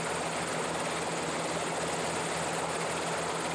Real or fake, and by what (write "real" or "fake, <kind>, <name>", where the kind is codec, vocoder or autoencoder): real